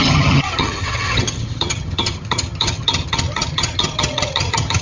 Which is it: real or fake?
fake